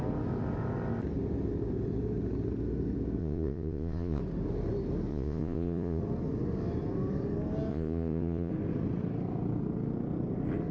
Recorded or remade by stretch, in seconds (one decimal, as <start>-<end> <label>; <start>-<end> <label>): 0.0-3.2 recorded; 3.2-4.2 remade; 4.2-5.1 recorded; 5.1-6.0 remade; 6.0-7.7 recorded; 7.7-8.5 remade; 8.5-10.7 recorded